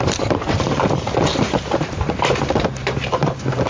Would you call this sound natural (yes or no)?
no